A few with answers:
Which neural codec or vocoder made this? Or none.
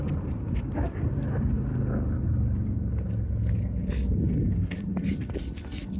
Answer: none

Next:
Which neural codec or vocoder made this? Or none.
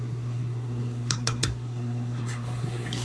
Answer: codec, SNAC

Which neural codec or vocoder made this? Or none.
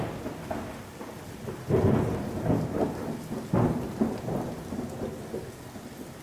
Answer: none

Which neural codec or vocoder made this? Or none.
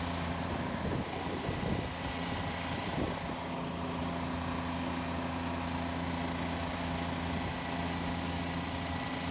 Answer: none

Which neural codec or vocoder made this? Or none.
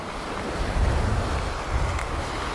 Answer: none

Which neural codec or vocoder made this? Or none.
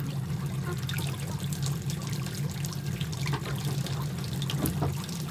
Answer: none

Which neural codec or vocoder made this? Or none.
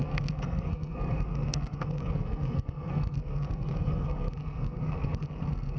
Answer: codec, SNAC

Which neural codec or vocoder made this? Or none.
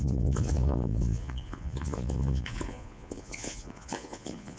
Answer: vocoder, Vocos